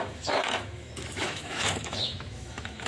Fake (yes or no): yes